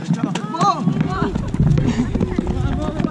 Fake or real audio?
real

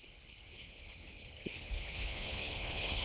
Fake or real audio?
fake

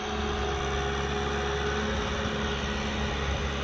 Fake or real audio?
real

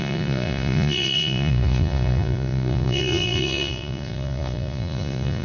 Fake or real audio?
fake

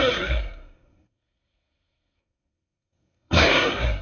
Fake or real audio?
fake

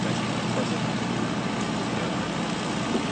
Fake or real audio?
real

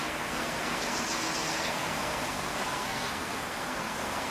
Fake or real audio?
fake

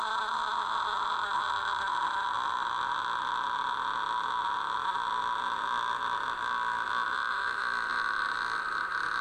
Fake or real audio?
real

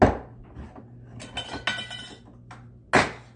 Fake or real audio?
real